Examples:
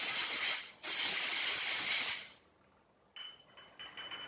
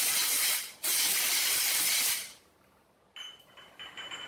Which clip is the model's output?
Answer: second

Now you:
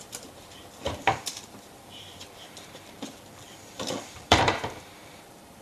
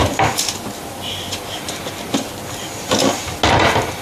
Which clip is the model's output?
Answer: first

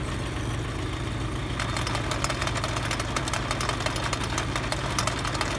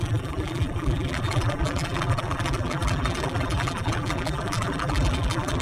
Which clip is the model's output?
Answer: second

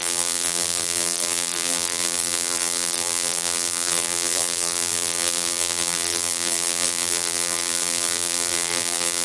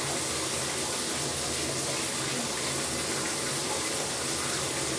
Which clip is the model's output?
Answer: first